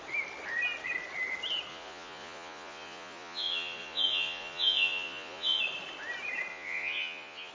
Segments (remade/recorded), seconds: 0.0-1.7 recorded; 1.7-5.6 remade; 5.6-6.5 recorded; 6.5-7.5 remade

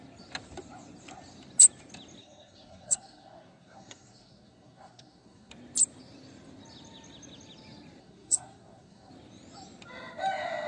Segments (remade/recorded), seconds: 0.0-2.2 recorded; 2.2-5.5 remade; 5.5-8.0 recorded; 8.0-9.1 remade; 9.1-10.7 recorded

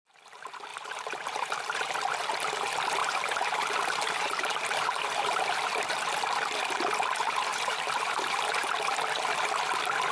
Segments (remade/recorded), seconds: 0.0-0.7 recorded; 0.7-1.9 remade; 1.9-3.0 recorded; 3.0-6.1 remade; 6.1-7.5 recorded; 7.5-8.7 remade; 8.7-10.1 recorded

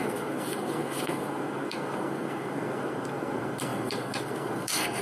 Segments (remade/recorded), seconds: 0.0-5.0 remade

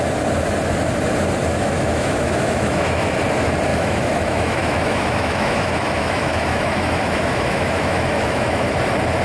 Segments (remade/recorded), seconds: 0.0-1.5 recorded; 1.5-3.2 remade; 3.2-3.7 recorded; 3.7-8.7 remade; 8.7-9.2 recorded